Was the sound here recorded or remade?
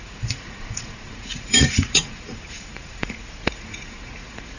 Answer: remade